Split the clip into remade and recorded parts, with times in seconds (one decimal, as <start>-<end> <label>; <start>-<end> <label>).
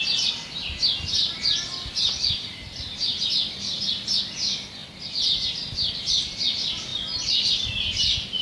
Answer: 0.0-8.4 recorded